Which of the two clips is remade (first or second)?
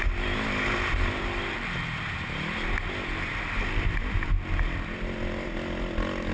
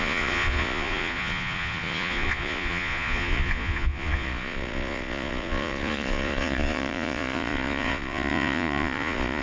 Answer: second